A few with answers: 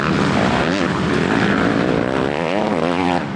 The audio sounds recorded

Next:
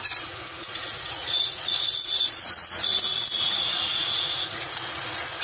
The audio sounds remade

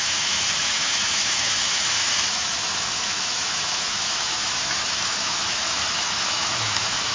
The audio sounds remade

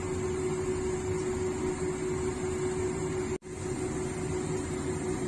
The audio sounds recorded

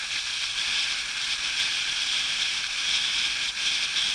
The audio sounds recorded